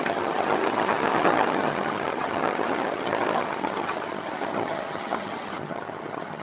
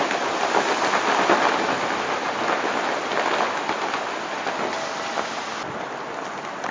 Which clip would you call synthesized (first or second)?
first